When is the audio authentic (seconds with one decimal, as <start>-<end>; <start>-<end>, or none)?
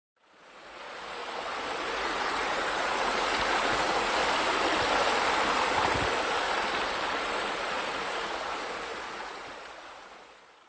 1.2-1.9; 4.2-7.1